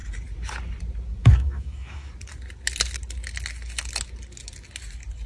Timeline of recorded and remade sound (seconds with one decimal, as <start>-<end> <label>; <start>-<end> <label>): 0.0-1.2 recorded; 1.2-2.1 remade; 2.1-5.3 recorded